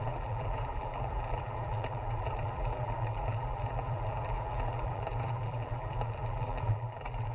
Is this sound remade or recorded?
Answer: remade